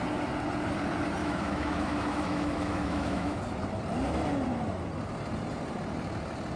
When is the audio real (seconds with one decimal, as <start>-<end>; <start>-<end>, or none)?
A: 0.0-1.2; 3.4-6.6

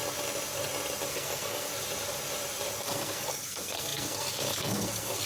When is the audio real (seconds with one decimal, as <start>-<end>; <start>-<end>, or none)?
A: 0.0-1.1; 1.7-2.8

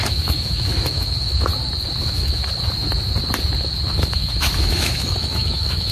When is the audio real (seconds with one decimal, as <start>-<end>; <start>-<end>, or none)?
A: 1.5-2.0; 2.4-3.9

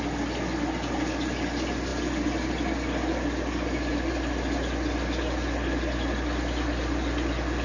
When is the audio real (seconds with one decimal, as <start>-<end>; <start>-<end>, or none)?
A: 0.0-7.6

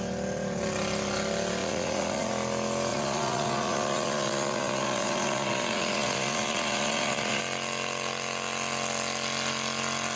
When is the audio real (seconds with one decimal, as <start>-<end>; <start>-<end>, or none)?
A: 0.0-1.6; 2.3-2.9; 7.4-10.2

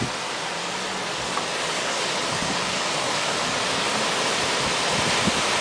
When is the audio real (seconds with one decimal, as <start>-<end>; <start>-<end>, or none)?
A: 0.0-0.6; 4.0-5.6